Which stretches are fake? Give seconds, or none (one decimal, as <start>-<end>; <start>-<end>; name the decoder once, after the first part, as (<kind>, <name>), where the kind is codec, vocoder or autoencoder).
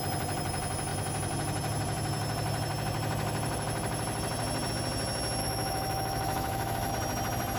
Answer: 5.4-6.9 (autoencoder, DAC-VAE)